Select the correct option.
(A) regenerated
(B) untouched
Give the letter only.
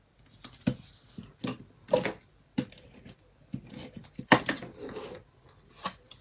B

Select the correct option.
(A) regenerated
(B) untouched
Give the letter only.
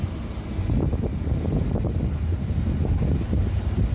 B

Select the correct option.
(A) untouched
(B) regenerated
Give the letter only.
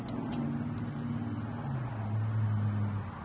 A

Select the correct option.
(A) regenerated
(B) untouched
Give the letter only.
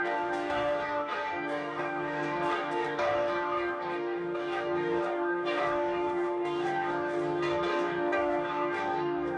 A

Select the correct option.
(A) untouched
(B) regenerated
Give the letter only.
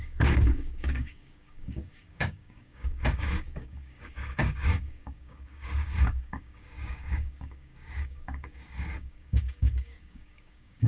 B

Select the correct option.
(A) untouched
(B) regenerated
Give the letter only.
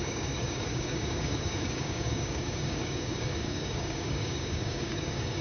B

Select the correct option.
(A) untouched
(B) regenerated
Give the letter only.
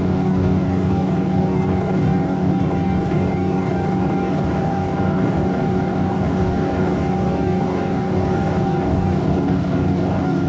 B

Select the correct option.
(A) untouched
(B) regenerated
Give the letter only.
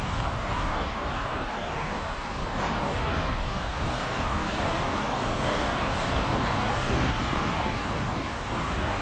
B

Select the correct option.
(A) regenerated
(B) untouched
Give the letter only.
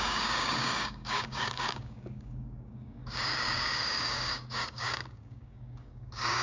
A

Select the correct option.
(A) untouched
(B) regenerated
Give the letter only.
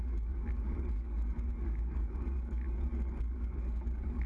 B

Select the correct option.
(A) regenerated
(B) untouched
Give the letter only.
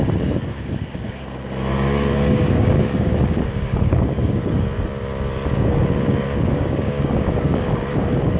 A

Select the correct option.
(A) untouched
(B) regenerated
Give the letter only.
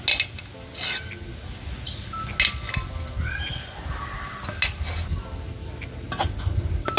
A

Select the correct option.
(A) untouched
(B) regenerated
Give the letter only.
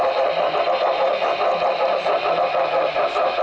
A